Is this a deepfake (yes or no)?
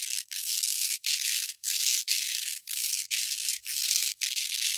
yes